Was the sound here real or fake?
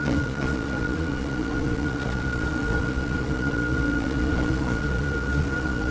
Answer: fake